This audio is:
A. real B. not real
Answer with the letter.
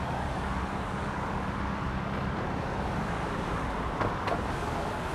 B